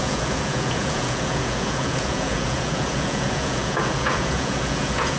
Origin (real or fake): fake